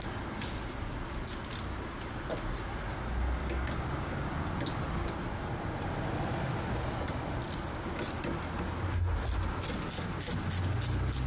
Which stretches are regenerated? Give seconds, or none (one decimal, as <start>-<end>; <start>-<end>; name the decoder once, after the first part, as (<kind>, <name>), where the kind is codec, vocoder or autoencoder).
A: 3.4-4.3 (codec, DAC)